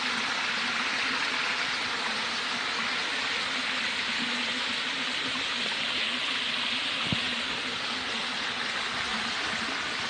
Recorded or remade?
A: recorded